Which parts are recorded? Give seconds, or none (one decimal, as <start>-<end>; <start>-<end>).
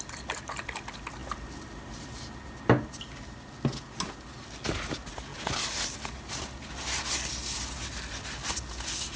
0.0-9.2